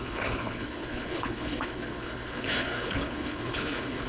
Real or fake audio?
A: fake